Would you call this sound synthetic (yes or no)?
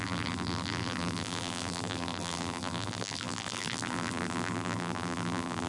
yes